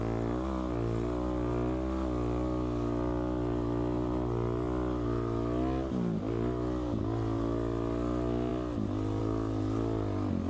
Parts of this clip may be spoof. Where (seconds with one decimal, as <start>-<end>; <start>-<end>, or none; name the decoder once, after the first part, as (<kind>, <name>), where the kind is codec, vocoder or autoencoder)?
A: none